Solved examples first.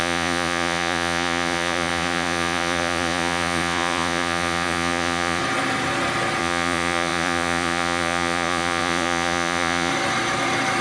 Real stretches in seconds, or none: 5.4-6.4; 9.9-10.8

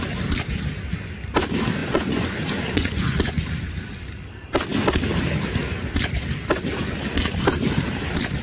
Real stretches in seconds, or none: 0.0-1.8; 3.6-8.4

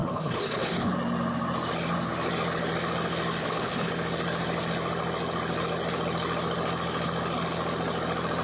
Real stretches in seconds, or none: 0.9-3.4; 3.9-8.4

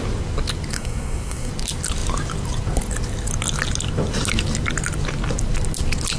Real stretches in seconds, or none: 0.0-0.7; 1.5-6.2

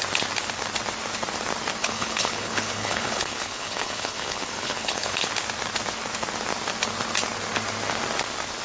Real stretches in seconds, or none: 0.0-1.8; 5.3-8.6